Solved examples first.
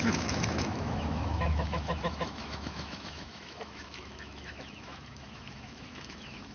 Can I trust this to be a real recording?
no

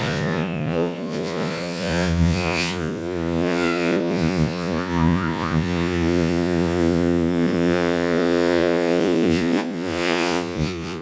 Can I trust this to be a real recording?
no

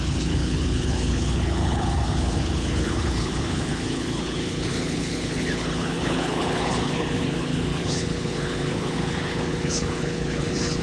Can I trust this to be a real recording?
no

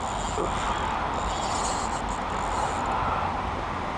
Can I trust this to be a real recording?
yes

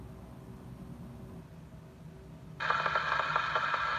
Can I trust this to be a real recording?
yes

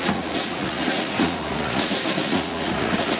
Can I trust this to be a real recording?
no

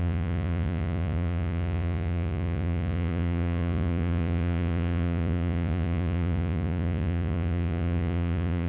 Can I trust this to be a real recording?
no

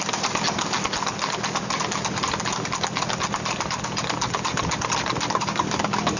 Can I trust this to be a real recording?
yes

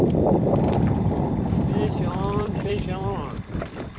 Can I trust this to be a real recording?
no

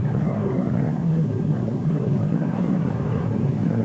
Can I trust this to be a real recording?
no